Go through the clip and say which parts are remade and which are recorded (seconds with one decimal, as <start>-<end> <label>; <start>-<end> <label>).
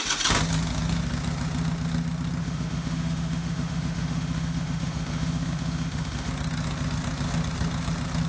0.0-2.4 recorded; 2.4-6.3 remade; 6.3-8.3 recorded